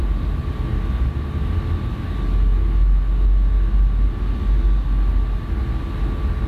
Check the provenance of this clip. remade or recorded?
recorded